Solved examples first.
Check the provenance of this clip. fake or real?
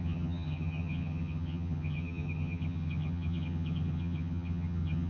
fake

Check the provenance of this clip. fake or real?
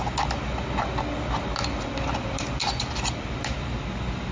real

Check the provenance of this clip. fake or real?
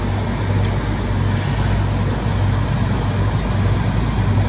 real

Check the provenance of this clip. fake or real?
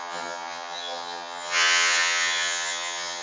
fake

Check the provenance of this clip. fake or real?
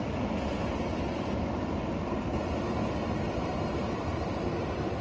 real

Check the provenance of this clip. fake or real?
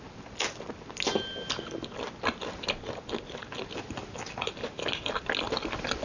real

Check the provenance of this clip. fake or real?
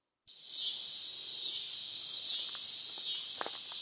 real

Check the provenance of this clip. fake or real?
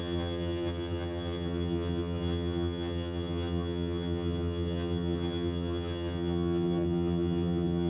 fake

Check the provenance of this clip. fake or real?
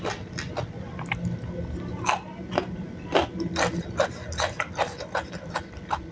real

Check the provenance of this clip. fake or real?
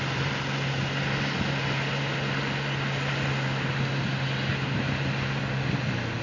real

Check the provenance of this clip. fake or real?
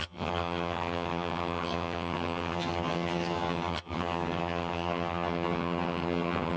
fake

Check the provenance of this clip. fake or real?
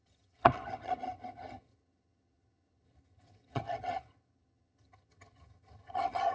fake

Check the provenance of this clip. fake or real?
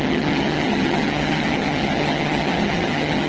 fake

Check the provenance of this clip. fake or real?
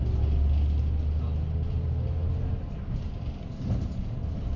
real